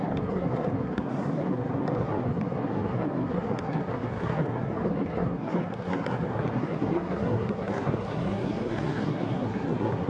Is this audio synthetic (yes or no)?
yes